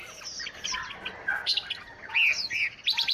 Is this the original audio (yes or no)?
yes